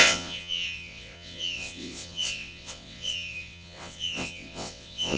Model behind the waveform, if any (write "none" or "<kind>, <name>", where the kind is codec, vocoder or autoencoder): vocoder, WaveNeXt